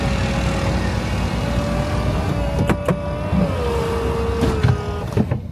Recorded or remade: recorded